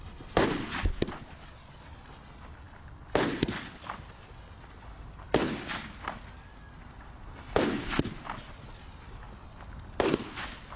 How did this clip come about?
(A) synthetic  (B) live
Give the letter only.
B